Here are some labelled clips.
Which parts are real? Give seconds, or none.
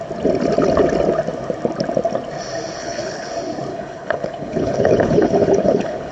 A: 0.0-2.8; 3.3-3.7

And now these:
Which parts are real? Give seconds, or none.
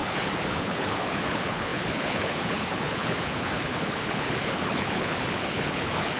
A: none